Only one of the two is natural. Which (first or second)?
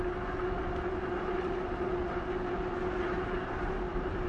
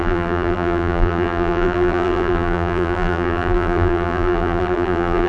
first